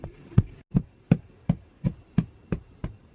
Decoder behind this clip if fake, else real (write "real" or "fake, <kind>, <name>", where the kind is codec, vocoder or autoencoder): real